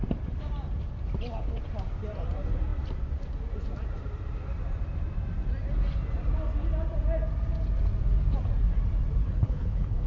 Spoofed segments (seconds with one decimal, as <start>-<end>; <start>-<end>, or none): 9.2-10.1